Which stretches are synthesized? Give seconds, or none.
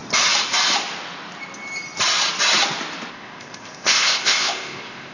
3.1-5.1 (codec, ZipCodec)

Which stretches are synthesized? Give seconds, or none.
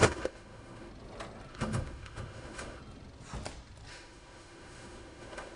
0.0-0.9 (autoencoder, DAC-VAE); 1.5-2.8; 3.9-5.6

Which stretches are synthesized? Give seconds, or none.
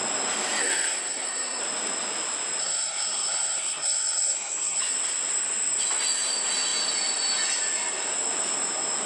0.6-1.6 (codec, SNAC); 2.6-4.8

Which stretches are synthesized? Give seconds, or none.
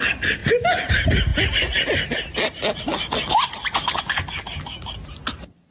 none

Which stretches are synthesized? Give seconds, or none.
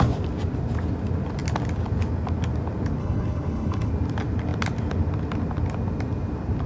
3.0-3.9 (codec, HILCodec)